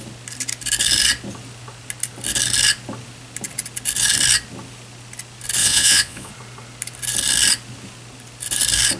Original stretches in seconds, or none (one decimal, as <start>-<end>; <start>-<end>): 0.0-5.6; 6.3-9.0